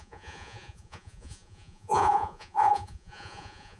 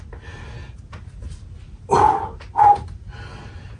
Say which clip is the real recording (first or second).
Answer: second